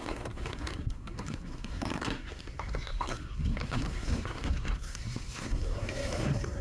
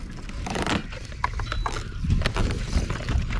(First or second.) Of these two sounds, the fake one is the first